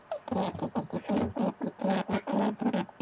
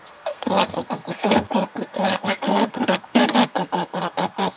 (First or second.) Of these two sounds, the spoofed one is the second